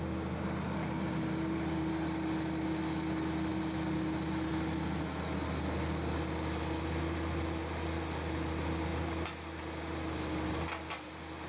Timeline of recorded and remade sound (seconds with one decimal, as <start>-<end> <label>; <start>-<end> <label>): 0.0-11.5 recorded